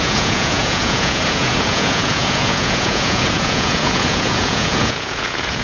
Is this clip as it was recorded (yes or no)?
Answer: no